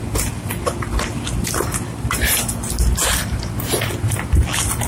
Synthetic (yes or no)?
no